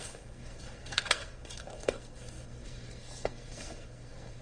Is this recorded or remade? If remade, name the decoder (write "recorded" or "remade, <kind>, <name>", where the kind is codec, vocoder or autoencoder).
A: remade, codec, SNAC